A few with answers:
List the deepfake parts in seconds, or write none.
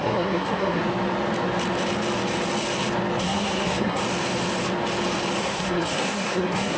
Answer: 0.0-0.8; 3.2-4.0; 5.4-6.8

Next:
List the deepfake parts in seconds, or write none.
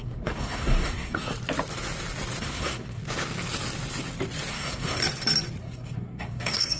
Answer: 0.0-1.3; 2.4-3.0; 4.5-5.0; 5.6-6.8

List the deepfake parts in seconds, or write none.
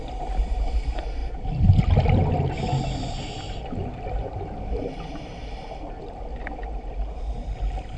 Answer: none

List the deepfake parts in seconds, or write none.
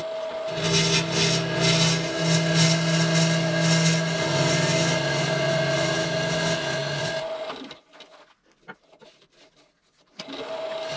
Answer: none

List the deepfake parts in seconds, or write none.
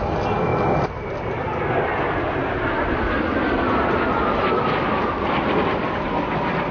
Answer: none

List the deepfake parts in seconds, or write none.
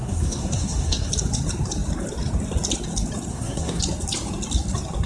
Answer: 0.0-1.1; 3.3-3.8